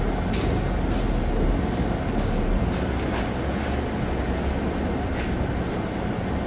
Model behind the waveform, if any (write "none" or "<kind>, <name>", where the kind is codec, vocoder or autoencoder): none